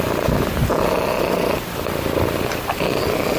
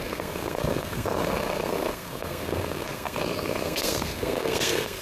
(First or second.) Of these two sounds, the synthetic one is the second